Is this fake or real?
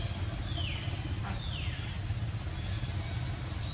real